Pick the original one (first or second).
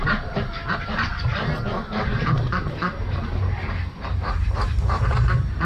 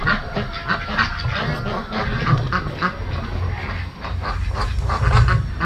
second